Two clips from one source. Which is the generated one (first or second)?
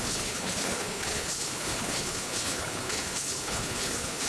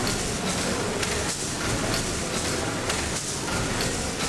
first